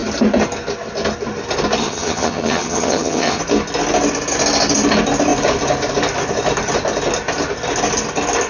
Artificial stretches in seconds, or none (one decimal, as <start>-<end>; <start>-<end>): 1.8-3.4